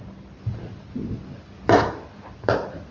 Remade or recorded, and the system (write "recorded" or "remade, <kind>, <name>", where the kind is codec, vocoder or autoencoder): remade, vocoder, BigVGAN v2